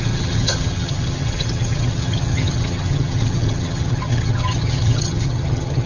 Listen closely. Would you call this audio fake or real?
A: fake